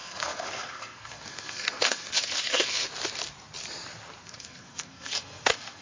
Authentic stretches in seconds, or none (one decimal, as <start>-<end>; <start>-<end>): 2.9-4.2